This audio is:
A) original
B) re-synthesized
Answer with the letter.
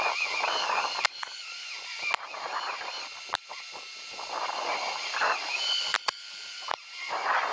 A